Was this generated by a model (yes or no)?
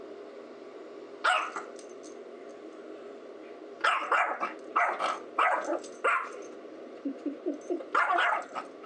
no